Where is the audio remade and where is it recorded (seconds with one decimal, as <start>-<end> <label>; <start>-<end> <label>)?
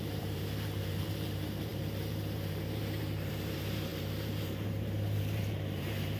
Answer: 0.0-6.2 remade